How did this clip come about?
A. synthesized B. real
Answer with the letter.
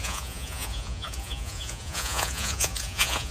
A